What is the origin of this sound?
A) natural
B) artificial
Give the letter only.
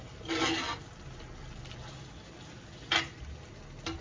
A